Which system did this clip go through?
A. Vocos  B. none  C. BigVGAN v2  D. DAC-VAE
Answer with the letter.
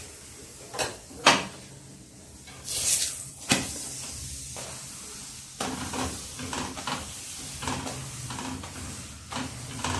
B